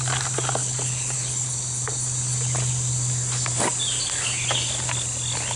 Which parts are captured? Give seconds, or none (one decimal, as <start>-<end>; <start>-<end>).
0.0-0.6; 1.5-5.6